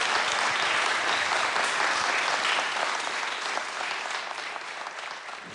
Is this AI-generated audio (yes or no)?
no